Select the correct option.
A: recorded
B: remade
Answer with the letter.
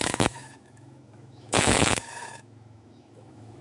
B